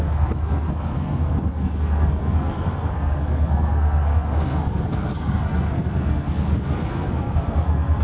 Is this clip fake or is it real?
fake